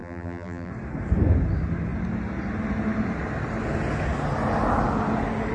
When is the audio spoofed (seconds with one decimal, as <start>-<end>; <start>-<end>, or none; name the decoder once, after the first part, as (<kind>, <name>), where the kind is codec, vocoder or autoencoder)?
0.0-0.7 (vocoder, BigVGAN v2)